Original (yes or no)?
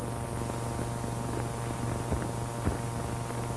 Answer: yes